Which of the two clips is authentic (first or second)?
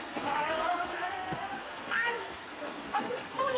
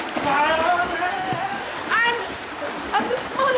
second